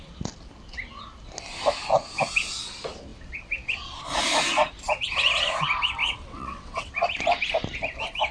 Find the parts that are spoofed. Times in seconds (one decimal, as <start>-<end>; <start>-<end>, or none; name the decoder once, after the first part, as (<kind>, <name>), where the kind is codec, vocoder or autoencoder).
6.0-6.9 (vocoder, WaveNeXt)